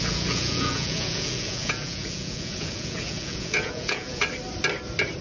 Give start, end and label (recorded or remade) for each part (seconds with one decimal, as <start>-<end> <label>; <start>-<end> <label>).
0.0-4.2 remade; 4.2-5.2 recorded